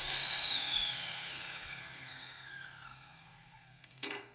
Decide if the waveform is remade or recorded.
remade